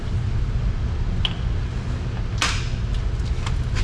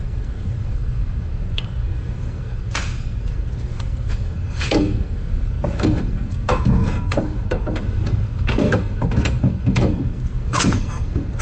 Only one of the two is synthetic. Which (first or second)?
second